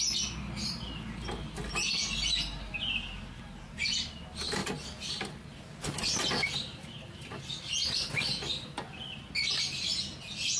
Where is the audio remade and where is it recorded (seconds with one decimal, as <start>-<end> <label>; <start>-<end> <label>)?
0.0-10.6 recorded